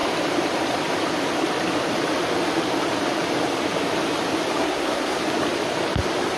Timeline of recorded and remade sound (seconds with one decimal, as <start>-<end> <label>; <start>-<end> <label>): 0.0-4.6 recorded; 4.6-5.2 remade; 5.2-6.4 recorded